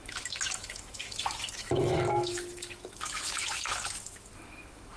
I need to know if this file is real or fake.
fake